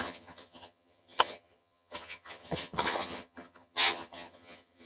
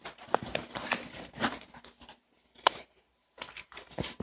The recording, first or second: second